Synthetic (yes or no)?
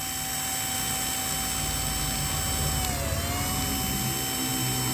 no